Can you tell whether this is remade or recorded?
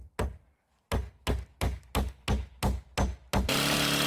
recorded